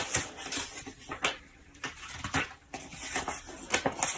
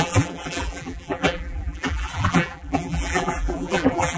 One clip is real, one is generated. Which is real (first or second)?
first